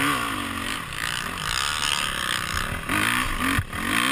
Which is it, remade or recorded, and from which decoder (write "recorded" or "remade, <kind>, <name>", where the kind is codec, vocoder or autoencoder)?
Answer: recorded